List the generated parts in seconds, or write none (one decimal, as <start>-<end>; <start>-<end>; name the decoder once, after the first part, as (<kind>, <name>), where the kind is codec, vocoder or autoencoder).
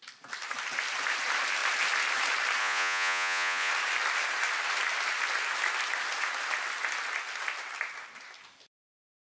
2.6-3.7 (vocoder, Vocos)